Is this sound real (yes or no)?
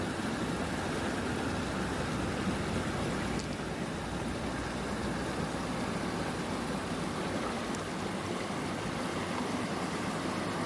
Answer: yes